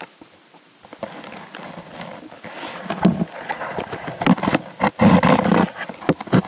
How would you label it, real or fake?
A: real